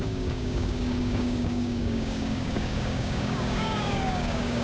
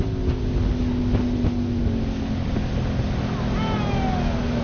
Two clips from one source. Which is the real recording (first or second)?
second